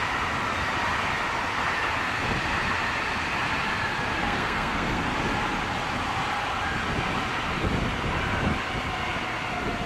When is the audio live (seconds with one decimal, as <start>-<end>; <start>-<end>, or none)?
0.0-4.2; 5.0-9.9